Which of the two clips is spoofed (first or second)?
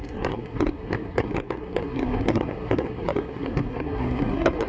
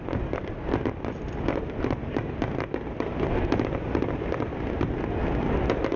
first